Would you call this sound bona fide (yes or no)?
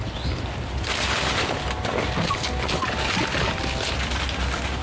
yes